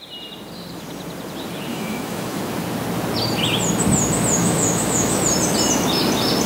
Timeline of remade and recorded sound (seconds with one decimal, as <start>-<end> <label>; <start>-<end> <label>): 0.0-1.7 recorded; 1.7-2.4 remade; 2.4-4.4 recorded; 4.4-5.2 remade; 5.2-6.5 recorded